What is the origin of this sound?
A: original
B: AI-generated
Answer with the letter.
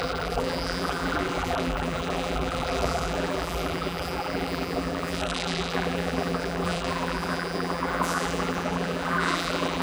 B